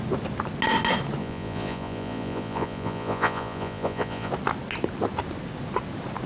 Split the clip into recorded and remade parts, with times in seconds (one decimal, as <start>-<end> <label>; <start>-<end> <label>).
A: 0.0-1.2 recorded; 1.2-4.3 remade; 4.3-6.3 recorded